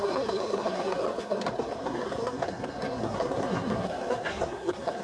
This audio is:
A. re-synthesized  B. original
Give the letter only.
A